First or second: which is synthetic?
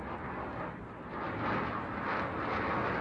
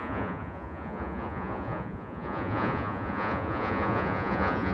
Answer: second